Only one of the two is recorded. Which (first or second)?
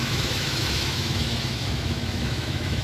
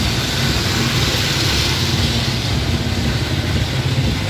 second